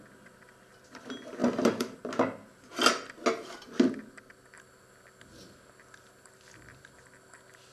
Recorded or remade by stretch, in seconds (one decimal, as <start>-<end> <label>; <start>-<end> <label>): 0.0-1.4 recorded; 1.4-2.0 remade; 2.0-7.7 recorded